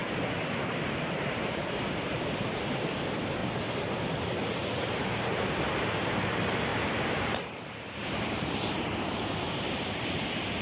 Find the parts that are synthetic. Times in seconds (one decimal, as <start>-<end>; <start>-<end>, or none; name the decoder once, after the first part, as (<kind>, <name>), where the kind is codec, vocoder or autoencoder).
0.7-3.4 (vocoder, BigVGAN v2); 6.1-10.6